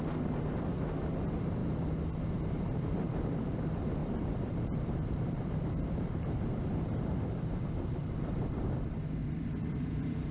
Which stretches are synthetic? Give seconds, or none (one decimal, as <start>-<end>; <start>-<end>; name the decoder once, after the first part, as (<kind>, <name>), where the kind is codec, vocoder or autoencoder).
0.0-1.6 (vocoder, BigVGAN v2); 2.3-10.3